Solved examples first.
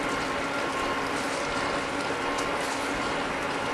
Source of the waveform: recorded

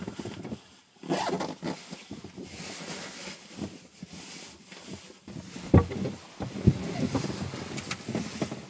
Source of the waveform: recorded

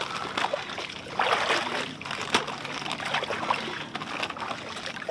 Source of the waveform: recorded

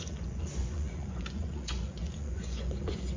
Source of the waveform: remade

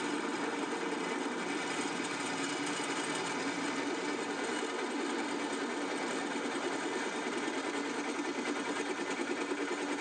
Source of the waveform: recorded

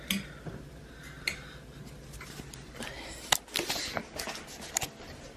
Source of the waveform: recorded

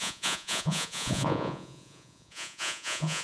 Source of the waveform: remade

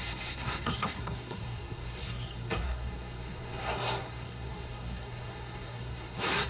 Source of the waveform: remade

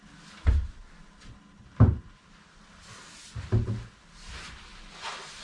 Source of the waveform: recorded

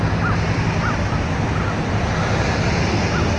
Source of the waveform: recorded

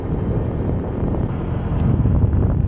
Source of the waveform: recorded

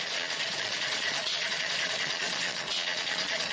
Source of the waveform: remade